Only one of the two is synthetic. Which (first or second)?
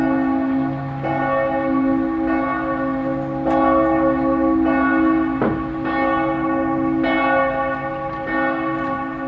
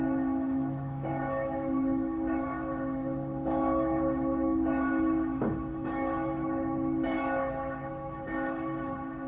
second